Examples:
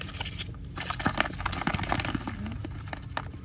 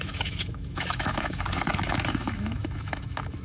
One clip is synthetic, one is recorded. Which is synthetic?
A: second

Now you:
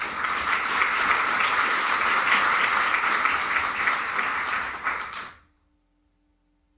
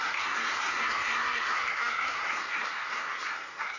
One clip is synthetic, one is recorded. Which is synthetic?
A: second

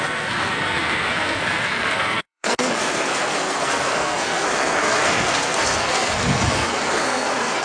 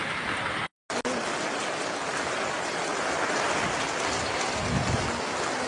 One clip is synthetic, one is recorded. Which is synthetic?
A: first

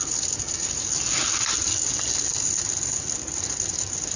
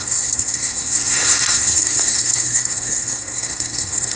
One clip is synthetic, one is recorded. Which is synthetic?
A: second